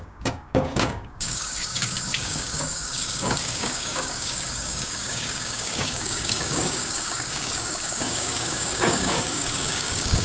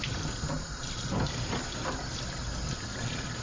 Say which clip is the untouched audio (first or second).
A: second